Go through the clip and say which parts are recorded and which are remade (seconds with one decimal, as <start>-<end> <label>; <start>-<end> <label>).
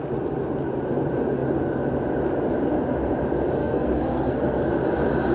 0.0-3.6 recorded; 3.6-4.6 remade; 4.6-5.3 recorded